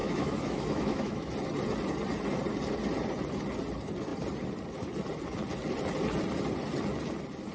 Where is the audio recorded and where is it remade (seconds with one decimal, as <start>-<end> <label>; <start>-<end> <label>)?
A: 0.0-1.3 remade; 1.3-7.5 recorded